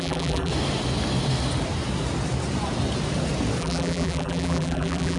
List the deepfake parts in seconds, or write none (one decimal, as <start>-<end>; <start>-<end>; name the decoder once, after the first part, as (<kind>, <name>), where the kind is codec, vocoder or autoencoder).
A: 0.0-0.5 (vocoder, BigVGAN v2); 3.6-5.2